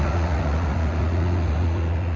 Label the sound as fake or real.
fake